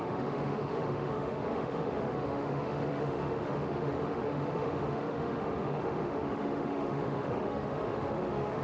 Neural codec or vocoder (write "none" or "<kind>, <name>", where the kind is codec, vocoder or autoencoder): autoencoder, DAC-VAE